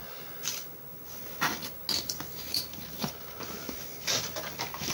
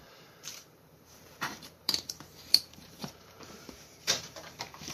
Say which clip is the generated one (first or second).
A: second